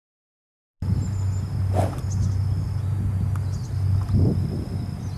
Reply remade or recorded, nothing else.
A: recorded